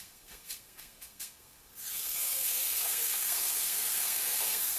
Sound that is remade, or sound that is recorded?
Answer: remade